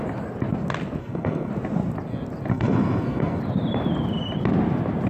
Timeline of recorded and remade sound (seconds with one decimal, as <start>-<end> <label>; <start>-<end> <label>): 0.0-1.0 recorded; 1.0-1.5 remade; 1.5-2.5 recorded; 2.5-3.4 remade; 3.4-5.1 recorded